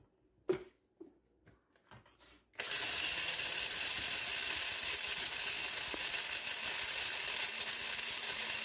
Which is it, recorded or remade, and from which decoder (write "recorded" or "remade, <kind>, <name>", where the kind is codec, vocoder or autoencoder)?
recorded